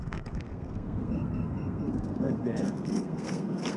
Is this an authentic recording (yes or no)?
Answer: no